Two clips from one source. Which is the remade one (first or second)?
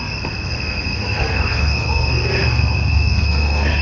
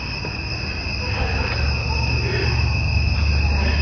first